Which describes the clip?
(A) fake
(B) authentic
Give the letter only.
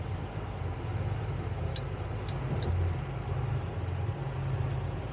B